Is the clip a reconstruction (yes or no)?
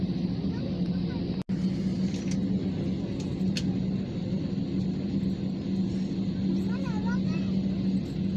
no